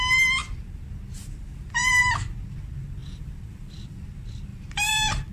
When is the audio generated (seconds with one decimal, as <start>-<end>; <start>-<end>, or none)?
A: 3.0-3.8; 4.5-5.3